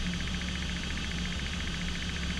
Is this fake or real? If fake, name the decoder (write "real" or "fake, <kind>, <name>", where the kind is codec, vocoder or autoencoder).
real